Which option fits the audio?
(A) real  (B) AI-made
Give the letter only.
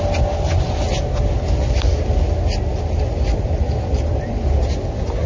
A